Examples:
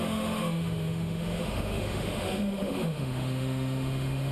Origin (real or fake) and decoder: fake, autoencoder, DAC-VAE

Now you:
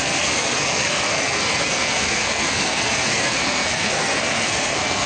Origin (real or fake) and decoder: fake, codec, SNAC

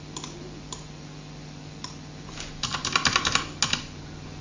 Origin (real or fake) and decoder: real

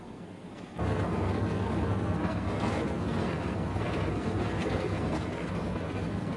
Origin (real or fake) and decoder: fake, codec, SNAC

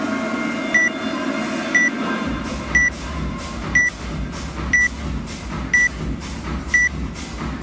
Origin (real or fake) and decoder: real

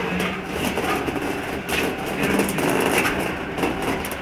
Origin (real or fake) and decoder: real